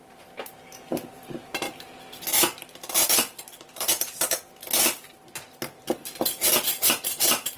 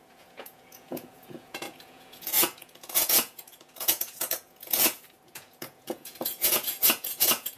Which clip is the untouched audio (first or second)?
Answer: first